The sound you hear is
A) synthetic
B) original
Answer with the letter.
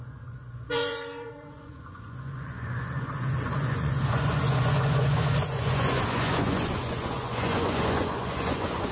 A